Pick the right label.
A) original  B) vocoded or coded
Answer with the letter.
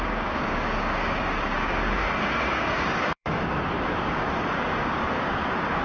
B